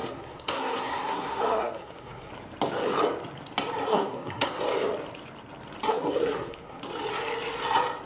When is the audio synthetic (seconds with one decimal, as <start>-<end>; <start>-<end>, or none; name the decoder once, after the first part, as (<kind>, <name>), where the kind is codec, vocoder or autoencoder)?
0.0-2.3 (codec, SNAC); 3.9-4.6; 5.9-6.8